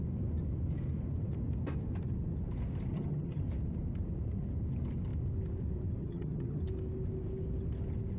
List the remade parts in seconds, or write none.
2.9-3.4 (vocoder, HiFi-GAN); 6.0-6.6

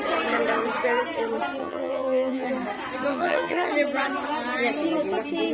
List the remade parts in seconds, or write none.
1.6-2.5 (vocoder, HiFi-GAN); 3.1-3.7

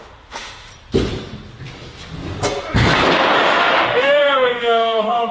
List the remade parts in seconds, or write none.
0.0-0.7 (autoencoder, DAC-VAE); 3.6-5.3

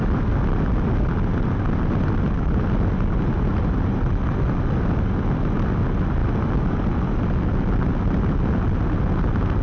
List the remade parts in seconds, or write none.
none

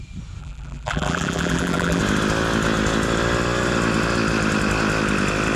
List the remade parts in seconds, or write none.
0.4-2.0 (vocoder, BigVGAN v2)

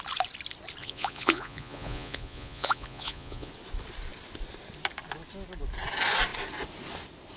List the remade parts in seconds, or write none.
0.8-3.5 (vocoder, Vocos)

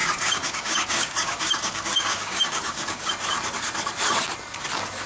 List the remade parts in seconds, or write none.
0.0-3.1 (codec, DAC)

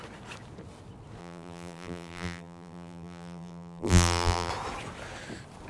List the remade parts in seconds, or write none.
1.2-4.5 (vocoder, BigVGAN v2)